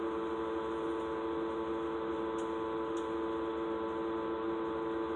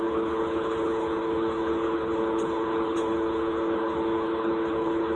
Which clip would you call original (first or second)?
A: first